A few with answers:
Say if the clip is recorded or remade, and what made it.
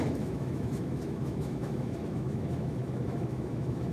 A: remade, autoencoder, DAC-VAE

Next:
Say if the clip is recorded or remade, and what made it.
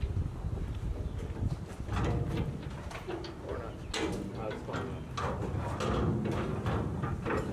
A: recorded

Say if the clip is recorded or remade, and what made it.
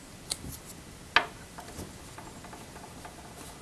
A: recorded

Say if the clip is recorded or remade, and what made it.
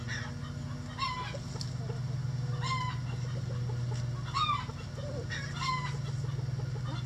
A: recorded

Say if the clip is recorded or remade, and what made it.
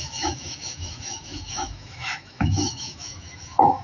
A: remade, autoencoder, DAC-VAE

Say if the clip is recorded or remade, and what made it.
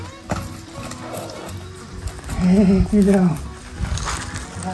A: recorded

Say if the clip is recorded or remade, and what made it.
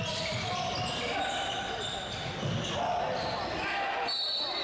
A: recorded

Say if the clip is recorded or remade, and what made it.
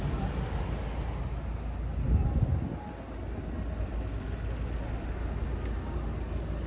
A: recorded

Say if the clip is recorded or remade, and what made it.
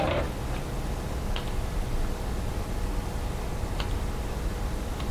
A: recorded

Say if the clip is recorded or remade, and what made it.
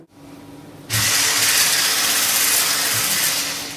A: recorded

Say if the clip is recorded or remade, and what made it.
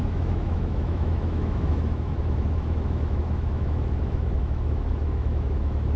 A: remade, autoencoder, DAC-VAE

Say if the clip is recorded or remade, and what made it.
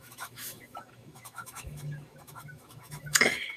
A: remade, autoencoder, DAC-VAE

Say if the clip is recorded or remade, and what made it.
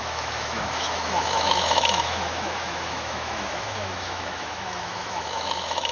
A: remade, autoencoder, DAC-VAE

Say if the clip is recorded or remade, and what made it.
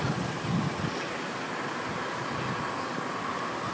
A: recorded